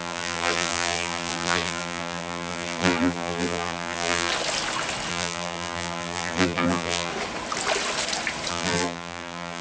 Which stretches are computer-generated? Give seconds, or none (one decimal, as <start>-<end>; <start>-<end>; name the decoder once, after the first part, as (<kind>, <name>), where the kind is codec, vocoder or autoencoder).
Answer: 0.0-4.3 (vocoder, BigVGAN v2); 5.1-7.1; 8.5-9.6